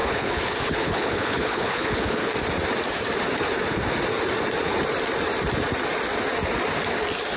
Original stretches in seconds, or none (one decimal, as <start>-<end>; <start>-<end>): 2.3-7.4